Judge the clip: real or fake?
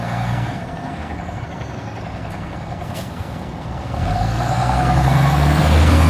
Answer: fake